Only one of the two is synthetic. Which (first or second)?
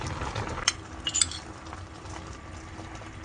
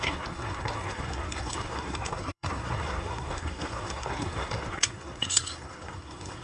second